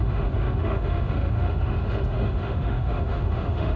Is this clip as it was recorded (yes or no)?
no